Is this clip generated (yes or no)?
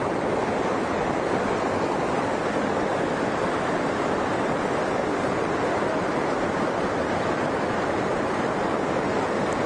no